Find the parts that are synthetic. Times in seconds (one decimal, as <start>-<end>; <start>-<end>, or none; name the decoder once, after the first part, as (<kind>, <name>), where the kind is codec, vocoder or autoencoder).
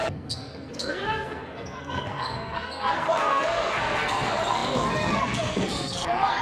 0.0-6.4 (codec, SNAC)